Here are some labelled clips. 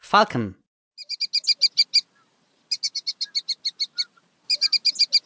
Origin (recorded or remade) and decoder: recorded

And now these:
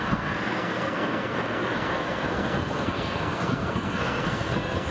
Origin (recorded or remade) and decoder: remade, codec, SNAC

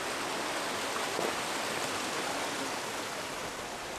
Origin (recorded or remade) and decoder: recorded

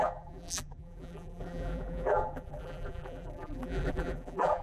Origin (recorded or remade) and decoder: remade, vocoder, BigVGAN v2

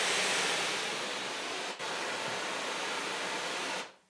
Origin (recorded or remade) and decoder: remade, vocoder, BigVGAN v2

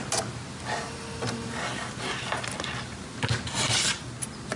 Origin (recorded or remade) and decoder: recorded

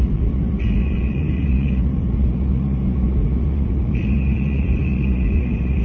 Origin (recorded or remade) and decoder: remade, vocoder, Vocos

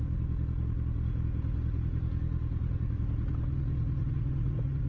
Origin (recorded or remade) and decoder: recorded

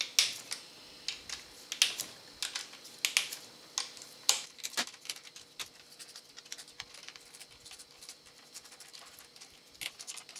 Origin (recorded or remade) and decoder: recorded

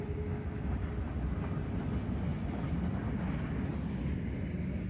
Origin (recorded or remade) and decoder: recorded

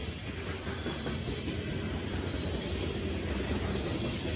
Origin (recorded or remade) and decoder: recorded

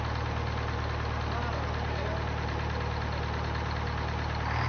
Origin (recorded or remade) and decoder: recorded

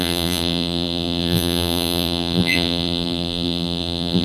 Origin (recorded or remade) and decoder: remade, vocoder, BigVGAN v2